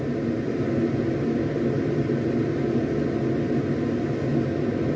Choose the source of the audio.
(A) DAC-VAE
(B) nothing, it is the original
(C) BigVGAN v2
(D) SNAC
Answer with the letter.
B